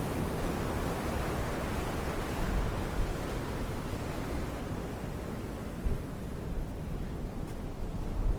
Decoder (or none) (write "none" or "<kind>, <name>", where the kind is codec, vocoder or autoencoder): none